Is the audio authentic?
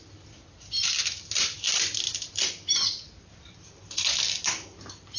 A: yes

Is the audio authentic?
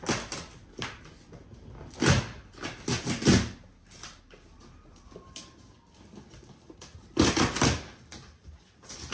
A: yes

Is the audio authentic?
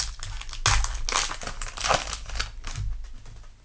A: yes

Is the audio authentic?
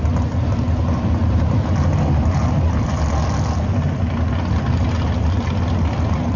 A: yes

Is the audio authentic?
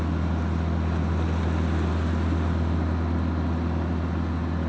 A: yes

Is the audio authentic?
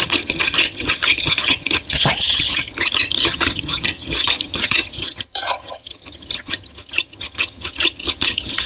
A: no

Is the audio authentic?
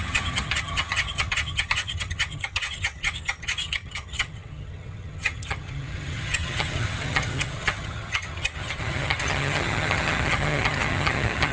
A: no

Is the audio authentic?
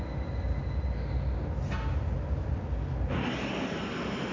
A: yes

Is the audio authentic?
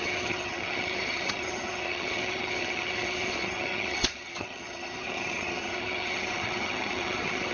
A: no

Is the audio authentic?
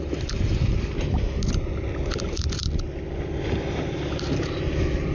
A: yes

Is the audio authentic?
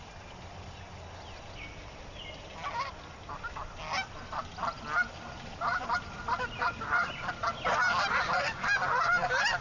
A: yes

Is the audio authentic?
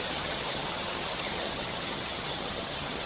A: no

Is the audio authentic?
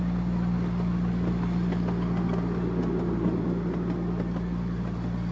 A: yes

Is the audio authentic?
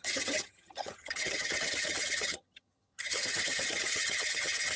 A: no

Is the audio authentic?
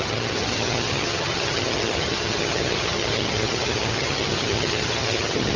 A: no